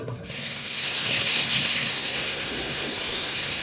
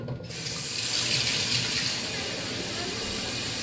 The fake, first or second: first